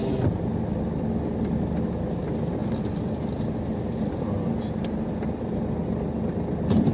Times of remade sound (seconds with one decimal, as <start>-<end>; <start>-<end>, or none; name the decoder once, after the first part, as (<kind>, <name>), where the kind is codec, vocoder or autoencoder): none